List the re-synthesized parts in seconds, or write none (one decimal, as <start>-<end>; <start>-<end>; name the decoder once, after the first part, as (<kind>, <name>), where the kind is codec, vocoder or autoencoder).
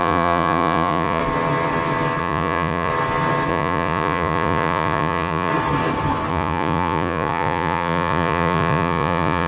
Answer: 0.0-1.2 (vocoder, Vocos); 2.2-2.9; 3.5-5.5; 6.3-9.5